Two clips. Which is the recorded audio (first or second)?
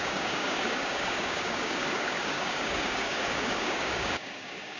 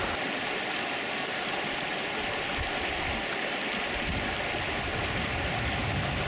second